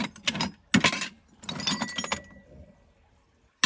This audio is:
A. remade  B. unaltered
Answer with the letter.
B